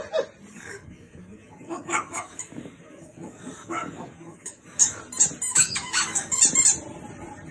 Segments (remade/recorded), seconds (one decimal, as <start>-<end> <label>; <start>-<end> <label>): 0.0-0.5 recorded; 0.5-5.0 remade; 5.0-5.5 recorded; 5.5-6.4 remade; 6.4-7.5 recorded